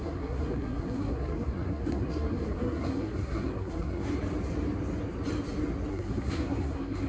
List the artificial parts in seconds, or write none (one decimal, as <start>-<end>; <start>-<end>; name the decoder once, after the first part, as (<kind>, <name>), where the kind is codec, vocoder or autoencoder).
0.0-4.1 (codec, SNAC); 5.9-7.1